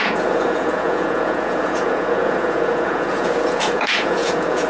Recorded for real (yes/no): no